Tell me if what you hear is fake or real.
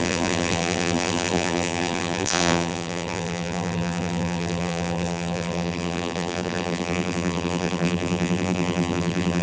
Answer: fake